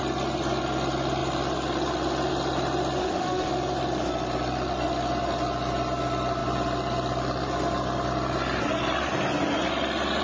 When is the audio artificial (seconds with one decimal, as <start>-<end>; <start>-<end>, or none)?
3.0-3.5